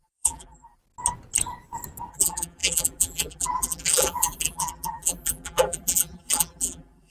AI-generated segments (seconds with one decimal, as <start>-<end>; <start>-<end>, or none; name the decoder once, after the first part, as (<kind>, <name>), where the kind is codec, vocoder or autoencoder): 0.0-0.8 (vocoder, BigVGAN v2); 2.1-7.1